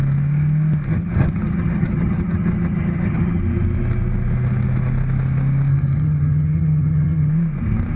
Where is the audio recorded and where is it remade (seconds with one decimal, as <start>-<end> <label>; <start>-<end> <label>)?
0.0-0.9 recorded; 0.9-3.4 remade; 3.4-5.7 recorded; 5.7-7.3 remade; 7.3-8.0 recorded